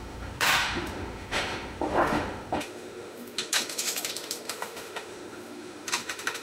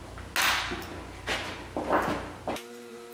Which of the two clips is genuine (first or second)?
second